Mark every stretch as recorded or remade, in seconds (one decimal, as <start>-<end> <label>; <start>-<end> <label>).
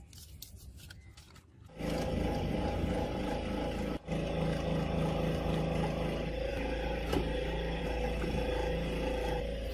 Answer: 0.0-9.7 recorded